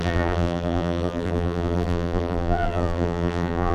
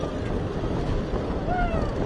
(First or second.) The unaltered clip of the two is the second